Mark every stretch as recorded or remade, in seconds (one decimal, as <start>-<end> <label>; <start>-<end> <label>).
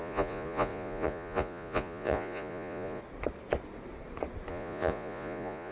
0.0-3.0 remade; 3.0-4.5 recorded; 4.5-5.7 remade